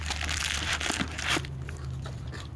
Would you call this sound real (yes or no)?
yes